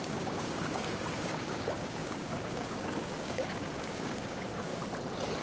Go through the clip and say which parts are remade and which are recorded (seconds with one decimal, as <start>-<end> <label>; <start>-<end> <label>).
0.0-4.7 remade; 4.7-5.4 recorded